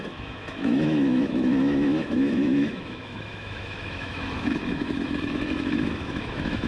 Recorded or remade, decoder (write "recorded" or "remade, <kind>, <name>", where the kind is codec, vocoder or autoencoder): remade, autoencoder, DAC-VAE